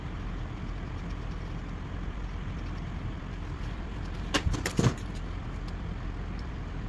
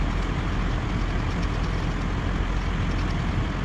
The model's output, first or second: first